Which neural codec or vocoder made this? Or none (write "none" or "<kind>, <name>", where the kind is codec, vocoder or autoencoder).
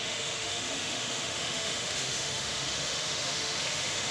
autoencoder, DAC-VAE